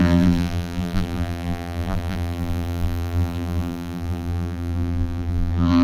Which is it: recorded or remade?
remade